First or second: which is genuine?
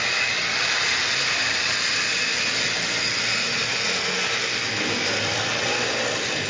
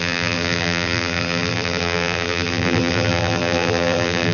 first